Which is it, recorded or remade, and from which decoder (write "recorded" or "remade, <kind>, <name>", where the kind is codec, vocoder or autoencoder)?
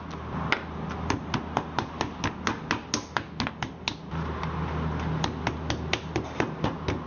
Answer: recorded